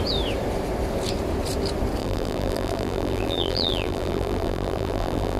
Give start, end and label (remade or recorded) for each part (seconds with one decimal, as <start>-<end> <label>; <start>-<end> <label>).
0.0-2.0 recorded; 2.0-5.4 remade